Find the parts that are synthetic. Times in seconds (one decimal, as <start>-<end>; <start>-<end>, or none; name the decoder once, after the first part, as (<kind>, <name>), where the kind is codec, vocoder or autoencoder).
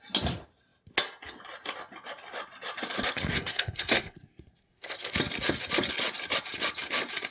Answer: 3.3-5.1 (codec, SNAC)